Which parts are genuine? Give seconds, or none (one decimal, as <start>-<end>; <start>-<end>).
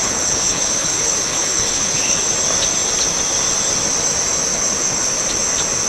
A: 2.3-4.5; 5.2-5.9